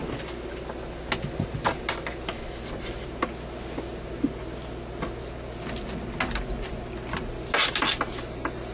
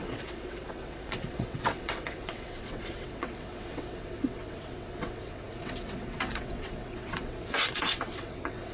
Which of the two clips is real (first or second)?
first